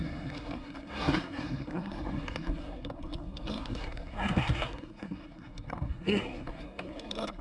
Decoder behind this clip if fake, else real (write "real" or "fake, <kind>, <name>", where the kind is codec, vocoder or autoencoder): fake, codec, SNAC